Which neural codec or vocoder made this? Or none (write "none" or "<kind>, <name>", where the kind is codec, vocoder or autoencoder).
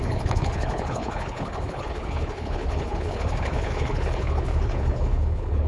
codec, HILCodec